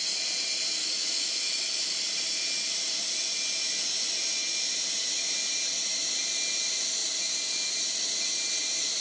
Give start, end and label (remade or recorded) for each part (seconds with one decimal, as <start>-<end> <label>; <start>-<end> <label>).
0.0-0.8 recorded; 0.8-1.9 remade; 1.9-9.0 recorded